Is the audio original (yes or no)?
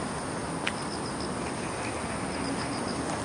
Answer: yes